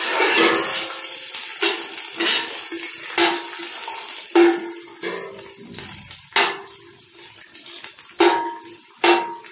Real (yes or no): yes